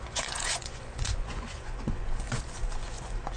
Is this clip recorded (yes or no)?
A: no